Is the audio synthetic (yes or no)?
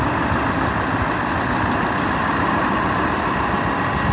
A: no